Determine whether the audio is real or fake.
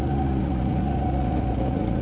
fake